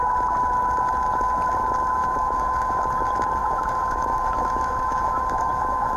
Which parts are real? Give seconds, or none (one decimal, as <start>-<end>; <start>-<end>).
0.0-2.0; 2.8-3.4